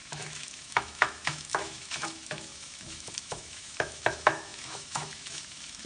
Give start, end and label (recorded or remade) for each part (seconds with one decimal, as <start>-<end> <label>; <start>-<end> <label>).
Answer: 0.0-5.9 remade